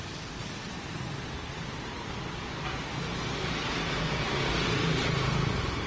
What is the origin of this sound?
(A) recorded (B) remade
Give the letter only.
B